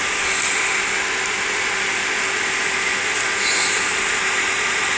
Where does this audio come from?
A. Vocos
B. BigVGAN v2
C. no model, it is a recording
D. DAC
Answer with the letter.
C